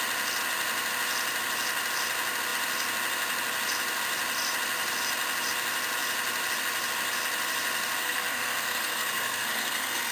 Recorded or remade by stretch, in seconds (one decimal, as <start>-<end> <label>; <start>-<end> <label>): 0.0-8.0 recorded; 8.0-10.1 remade